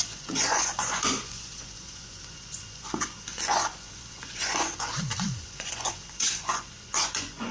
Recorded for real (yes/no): no